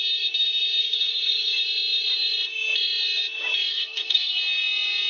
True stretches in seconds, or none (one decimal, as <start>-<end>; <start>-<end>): 0.0-0.8; 1.6-3.7; 4.4-5.1